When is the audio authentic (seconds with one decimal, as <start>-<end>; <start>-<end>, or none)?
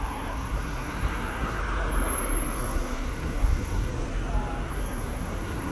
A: 1.6-2.6; 3.9-4.7